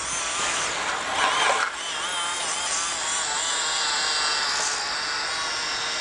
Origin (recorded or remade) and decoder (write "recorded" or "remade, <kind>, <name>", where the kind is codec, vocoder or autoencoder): recorded